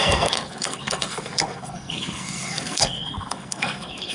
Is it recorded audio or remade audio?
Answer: remade